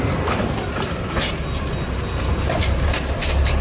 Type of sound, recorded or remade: recorded